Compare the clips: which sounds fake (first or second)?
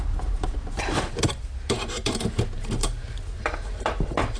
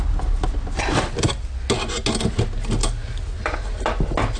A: first